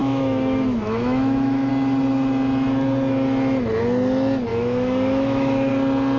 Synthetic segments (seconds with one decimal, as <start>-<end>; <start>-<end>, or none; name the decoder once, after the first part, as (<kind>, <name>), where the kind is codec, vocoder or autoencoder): 0.0-1.7 (autoencoder, DAC-VAE); 4.5-5.7